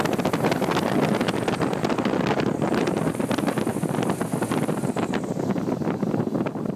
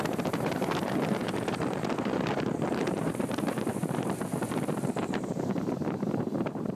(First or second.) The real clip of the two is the first